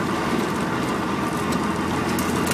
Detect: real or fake real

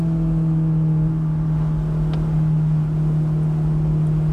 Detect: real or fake real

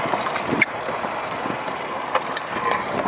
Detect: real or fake real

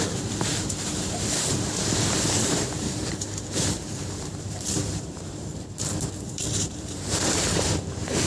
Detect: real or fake fake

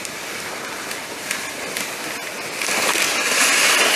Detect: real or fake real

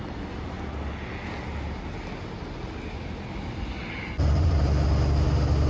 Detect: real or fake real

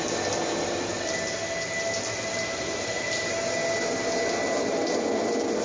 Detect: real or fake real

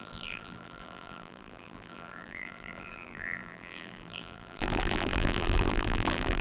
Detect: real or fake fake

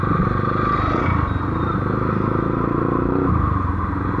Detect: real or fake real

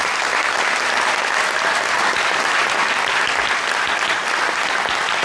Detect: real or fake real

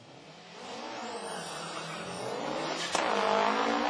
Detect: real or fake real